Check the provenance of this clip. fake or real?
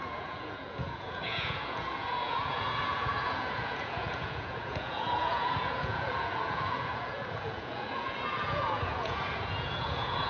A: fake